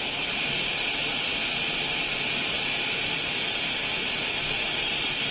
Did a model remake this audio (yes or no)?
no